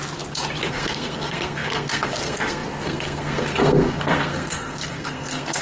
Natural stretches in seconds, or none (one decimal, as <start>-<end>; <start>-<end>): 0.0-0.7

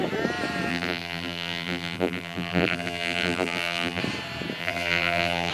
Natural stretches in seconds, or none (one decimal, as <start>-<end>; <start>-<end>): 0.0-0.7; 4.0-4.6

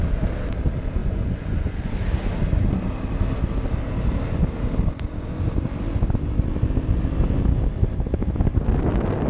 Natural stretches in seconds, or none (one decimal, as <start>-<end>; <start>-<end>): 0.0-1.0; 1.9-9.3

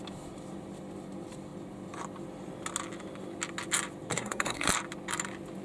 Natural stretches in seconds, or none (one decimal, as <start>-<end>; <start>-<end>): 0.0-4.1; 4.7-5.6

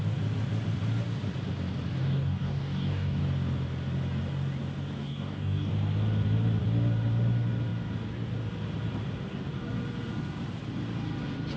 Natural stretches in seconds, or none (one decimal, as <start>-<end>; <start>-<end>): 0.0-2.0; 3.2-5.0; 5.7-11.6

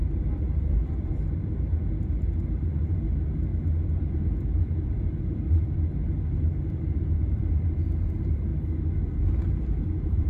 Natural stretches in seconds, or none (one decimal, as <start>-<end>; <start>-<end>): 3.5-4.1; 8.5-9.6

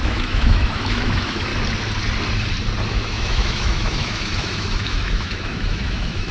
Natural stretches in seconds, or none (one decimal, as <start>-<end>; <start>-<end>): 1.5-2.9

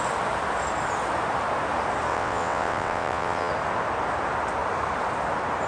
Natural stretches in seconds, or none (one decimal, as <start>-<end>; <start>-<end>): 0.0-2.1; 3.5-5.7